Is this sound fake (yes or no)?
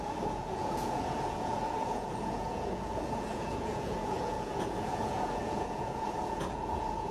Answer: yes